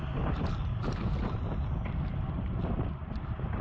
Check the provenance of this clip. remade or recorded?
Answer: remade